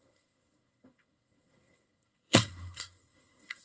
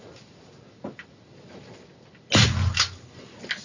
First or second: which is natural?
second